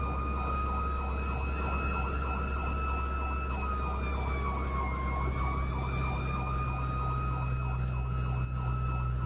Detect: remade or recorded recorded